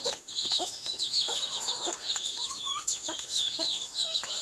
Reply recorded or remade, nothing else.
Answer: remade